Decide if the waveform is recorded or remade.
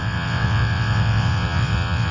remade